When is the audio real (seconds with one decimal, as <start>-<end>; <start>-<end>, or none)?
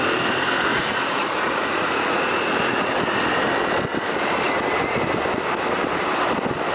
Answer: 0.0-0.7; 3.1-6.7